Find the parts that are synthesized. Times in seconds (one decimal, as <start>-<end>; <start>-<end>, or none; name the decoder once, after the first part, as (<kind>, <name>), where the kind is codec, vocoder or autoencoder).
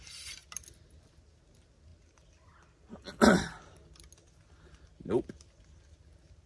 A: none